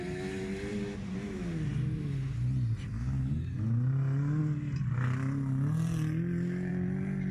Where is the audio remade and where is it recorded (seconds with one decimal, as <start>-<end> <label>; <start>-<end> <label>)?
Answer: 0.0-7.3 recorded